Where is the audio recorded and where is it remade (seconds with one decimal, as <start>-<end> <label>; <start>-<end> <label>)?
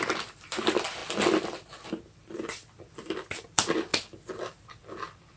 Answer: 0.0-1.0 remade; 1.0-1.9 recorded; 1.9-3.9 remade; 3.9-4.5 recorded; 4.5-5.4 remade